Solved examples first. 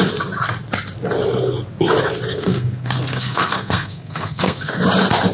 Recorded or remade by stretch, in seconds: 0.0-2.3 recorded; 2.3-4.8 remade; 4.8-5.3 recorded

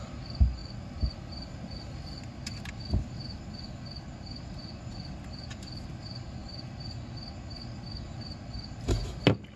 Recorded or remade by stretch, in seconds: 0.0-9.6 recorded